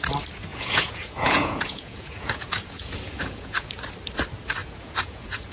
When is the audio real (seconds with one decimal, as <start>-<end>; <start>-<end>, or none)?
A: 0.0-0.5; 3.8-4.6